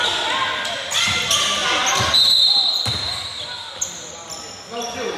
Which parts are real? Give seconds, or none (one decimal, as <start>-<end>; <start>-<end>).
0.0-5.2